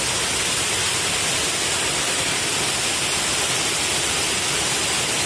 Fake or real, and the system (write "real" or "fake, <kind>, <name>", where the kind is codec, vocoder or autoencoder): real